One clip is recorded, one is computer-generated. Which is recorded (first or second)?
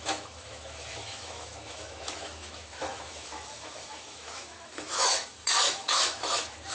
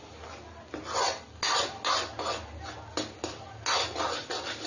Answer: second